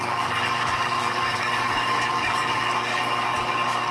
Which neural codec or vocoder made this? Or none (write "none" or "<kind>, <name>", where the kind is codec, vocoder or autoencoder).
codec, DAC